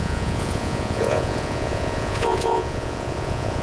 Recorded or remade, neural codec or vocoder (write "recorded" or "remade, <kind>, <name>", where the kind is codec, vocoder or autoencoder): remade, vocoder, Vocos